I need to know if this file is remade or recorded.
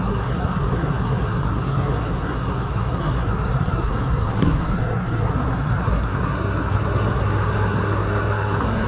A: remade